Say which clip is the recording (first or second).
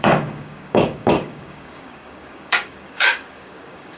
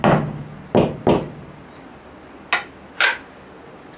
second